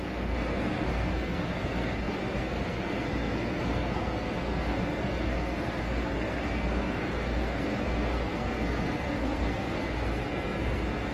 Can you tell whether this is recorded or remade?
remade